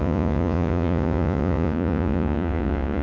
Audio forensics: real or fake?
fake